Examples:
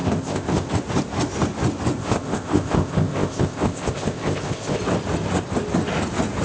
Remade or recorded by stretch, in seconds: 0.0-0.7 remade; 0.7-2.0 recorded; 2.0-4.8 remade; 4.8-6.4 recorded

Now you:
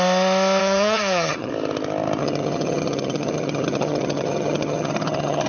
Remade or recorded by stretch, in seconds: 0.0-0.6 recorded; 0.6-1.5 remade; 1.5-2.2 recorded; 2.2-5.5 remade

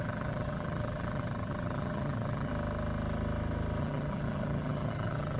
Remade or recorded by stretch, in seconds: 0.0-2.5 remade; 2.5-3.8 recorded; 3.8-5.4 remade

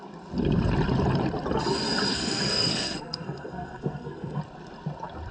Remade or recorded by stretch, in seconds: 0.0-2.1 recorded; 2.1-4.4 remade; 4.4-5.3 recorded

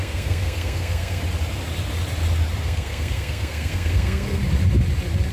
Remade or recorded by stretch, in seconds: 0.0-1.2 remade; 1.2-2.6 recorded; 2.6-4.4 remade; 4.4-5.3 recorded

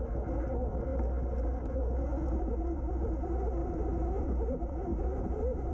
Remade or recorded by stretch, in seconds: 0.0-3.6 recorded; 3.6-4.2 remade; 4.2-4.9 recorded; 4.9-5.7 remade

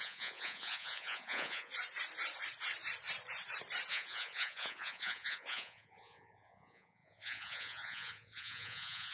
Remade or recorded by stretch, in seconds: 0.0-1.7 remade; 1.7-3.9 recorded; 3.9-9.1 remade